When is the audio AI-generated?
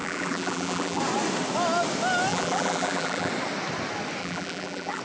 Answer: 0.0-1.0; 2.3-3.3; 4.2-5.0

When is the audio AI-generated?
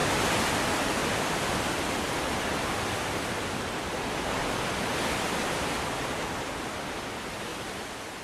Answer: 1.0-2.2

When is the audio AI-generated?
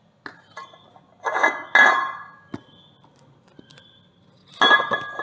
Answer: none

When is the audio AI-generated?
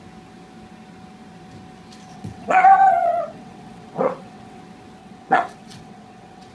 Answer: 2.1-4.6; 5.0-6.5